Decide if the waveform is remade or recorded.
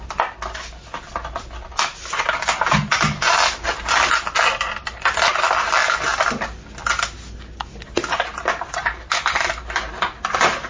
recorded